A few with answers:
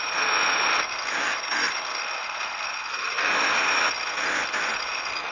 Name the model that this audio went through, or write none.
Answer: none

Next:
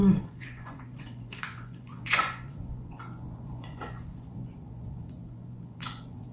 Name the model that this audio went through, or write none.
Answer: vocoder, Vocos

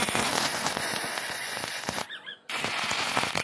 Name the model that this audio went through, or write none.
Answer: vocoder, Vocos